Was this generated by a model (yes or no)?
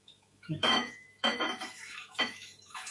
yes